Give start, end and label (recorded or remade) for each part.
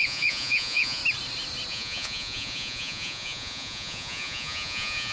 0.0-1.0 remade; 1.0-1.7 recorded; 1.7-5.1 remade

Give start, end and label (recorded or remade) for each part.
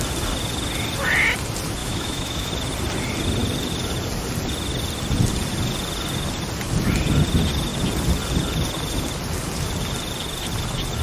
0.0-1.8 recorded; 1.8-2.5 remade; 2.5-11.0 recorded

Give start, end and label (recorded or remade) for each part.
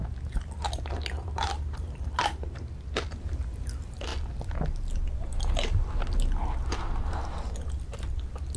0.0-0.9 recorded; 0.9-2.6 remade; 2.6-8.6 recorded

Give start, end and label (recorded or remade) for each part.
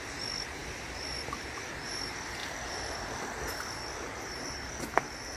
0.0-5.4 recorded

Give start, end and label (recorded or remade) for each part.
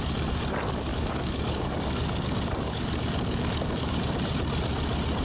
0.0-0.9 recorded; 0.9-3.9 remade; 3.9-5.2 recorded